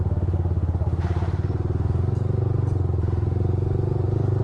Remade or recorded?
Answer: recorded